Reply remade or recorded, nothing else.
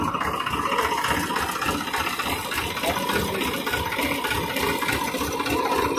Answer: recorded